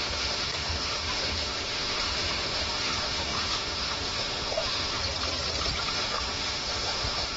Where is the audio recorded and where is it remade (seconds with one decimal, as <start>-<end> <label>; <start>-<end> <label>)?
0.0-5.0 remade; 5.0-5.8 recorded; 5.8-7.4 remade

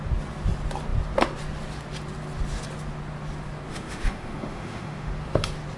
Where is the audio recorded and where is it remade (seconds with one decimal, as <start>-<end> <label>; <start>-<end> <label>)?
0.0-3.7 recorded; 3.7-5.1 remade; 5.1-5.8 recorded

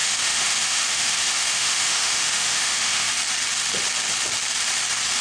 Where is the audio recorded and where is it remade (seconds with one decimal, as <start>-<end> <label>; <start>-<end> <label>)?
0.0-3.1 remade; 3.1-5.2 recorded

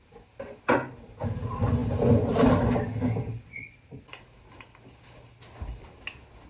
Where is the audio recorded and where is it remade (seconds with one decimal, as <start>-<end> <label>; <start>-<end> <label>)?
0.0-6.5 recorded

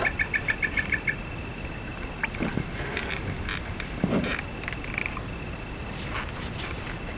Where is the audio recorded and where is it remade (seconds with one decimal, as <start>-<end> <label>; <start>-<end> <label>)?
0.0-7.2 recorded

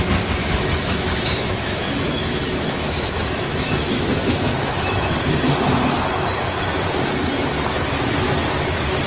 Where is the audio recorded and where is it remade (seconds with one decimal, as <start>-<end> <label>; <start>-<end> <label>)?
0.0-0.4 recorded; 0.4-5.1 remade; 5.1-9.1 recorded